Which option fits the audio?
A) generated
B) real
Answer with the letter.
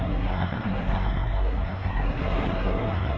A